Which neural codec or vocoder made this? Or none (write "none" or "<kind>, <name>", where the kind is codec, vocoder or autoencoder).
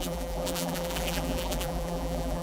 vocoder, BigVGAN v2